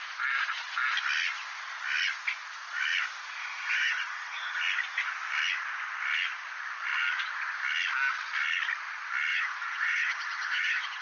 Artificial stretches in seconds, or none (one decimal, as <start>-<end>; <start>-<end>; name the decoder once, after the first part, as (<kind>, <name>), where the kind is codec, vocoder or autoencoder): 3.4-4.6 (vocoder, HiFi-GAN); 9.3-11.0